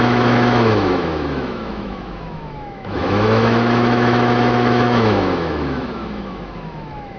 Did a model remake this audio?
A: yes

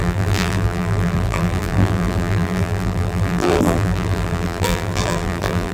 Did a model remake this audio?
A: yes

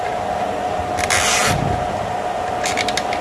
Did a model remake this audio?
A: no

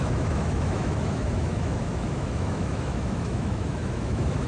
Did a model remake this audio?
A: yes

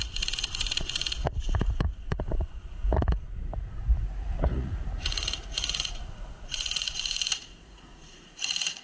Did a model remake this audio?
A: yes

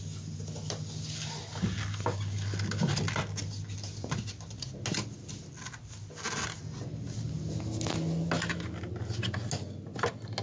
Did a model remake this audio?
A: no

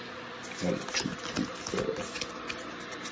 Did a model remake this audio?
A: no